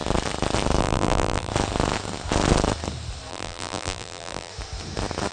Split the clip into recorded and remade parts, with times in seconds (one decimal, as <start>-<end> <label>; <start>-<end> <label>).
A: 0.0-0.8 recorded; 0.8-1.5 remade; 1.5-3.3 recorded; 3.3-4.5 remade; 4.5-5.3 recorded